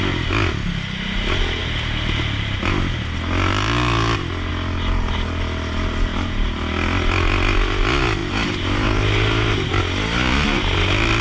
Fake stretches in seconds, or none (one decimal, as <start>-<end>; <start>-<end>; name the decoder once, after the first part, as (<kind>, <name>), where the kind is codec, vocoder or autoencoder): 6.1-6.6 (vocoder, BigVGAN v2); 8.2-9.8